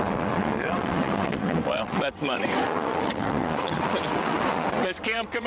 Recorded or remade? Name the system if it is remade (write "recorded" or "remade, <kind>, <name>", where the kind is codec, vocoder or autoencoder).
remade, vocoder, WaveNeXt